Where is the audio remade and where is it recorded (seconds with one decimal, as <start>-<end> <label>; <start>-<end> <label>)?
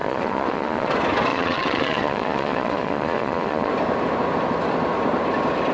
0.0-0.9 remade; 0.9-1.3 recorded; 1.3-3.7 remade; 3.7-5.7 recorded